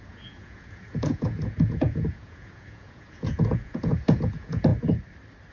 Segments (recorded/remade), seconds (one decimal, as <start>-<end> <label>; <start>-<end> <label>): 0.0-4.7 remade; 4.7-5.5 recorded